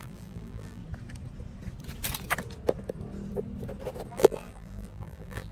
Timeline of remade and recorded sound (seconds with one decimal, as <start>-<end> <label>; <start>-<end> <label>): 0.0-0.8 remade; 0.8-4.1 recorded; 4.1-5.5 remade